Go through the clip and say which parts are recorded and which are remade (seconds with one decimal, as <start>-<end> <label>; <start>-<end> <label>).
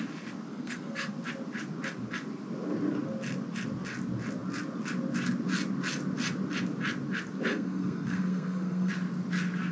0.0-0.5 recorded; 0.5-1.1 remade; 1.1-7.5 recorded; 7.5-8.9 remade; 8.9-9.7 recorded